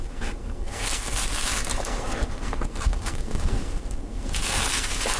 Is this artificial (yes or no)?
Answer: yes